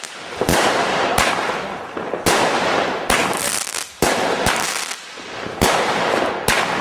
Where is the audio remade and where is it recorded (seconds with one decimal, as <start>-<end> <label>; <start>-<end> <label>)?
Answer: 0.0-0.5 recorded; 0.5-1.1 remade; 1.1-3.2 recorded; 3.2-3.9 remade; 3.9-6.8 recorded